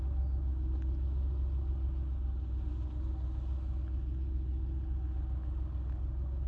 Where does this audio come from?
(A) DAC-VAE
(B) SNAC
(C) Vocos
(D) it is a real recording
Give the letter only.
D